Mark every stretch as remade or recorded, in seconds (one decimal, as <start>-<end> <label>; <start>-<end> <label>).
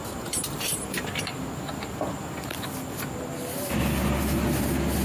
0.0-2.7 remade; 2.7-5.0 recorded